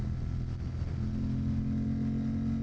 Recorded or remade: recorded